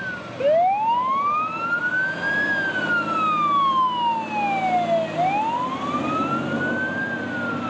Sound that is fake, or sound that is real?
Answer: real